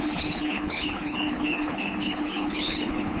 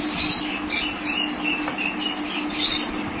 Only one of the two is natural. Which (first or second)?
second